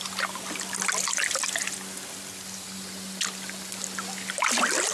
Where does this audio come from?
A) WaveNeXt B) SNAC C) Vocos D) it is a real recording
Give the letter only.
D